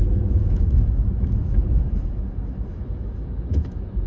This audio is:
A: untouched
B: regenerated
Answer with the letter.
B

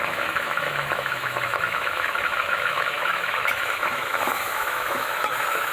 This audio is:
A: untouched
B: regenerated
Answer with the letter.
B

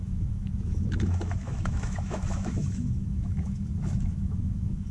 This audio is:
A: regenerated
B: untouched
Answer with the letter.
A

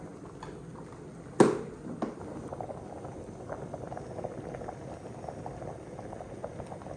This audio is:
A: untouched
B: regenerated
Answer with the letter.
A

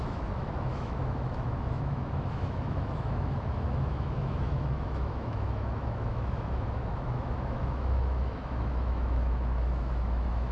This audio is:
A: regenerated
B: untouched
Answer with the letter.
A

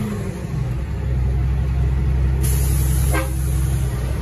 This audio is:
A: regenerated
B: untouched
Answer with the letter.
B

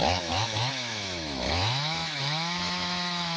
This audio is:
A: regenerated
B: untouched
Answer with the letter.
A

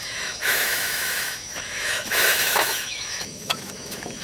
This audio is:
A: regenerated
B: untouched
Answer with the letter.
A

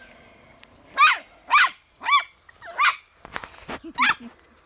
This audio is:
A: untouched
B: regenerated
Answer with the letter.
A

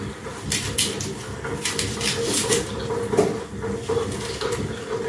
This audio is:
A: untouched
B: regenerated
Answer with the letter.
A